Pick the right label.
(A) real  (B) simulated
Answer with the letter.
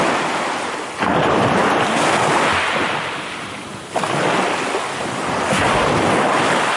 A